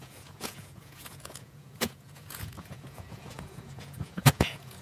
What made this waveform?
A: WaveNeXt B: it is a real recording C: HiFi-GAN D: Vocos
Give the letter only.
D